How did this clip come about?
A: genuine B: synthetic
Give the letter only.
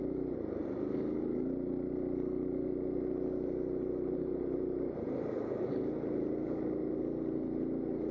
A